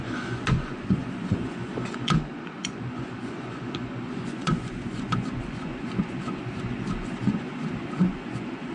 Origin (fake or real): fake